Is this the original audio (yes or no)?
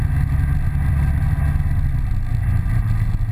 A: yes